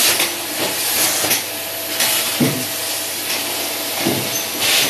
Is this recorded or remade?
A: recorded